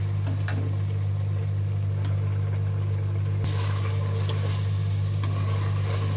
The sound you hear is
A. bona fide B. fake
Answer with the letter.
A